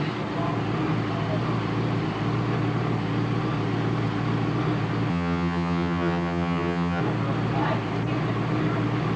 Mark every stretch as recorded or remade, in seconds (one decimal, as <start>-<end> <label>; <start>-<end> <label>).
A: 0.0-5.1 recorded; 5.1-7.0 remade; 7.0-9.2 recorded